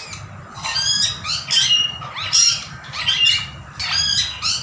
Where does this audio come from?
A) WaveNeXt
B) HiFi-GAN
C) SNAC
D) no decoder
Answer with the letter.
D